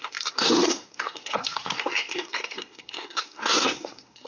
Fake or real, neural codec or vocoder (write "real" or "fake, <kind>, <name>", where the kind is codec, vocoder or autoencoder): fake, codec, SNAC